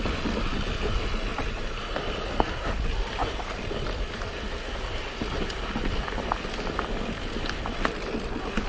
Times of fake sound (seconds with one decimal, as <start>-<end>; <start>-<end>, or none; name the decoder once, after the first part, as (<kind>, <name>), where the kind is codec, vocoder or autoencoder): 1.3-2.0 (vocoder, BigVGAN v2)